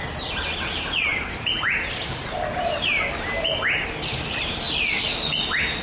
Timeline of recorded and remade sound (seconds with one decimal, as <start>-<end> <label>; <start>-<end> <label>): 0.0-5.8 recorded